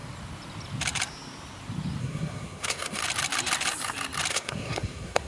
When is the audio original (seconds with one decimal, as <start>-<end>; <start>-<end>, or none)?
0.0-2.0; 3.0-4.3